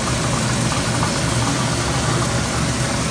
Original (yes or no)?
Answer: yes